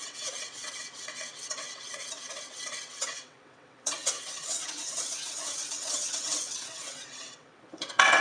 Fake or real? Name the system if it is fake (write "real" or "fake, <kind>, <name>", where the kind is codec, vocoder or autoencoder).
fake, vocoder, WaveNeXt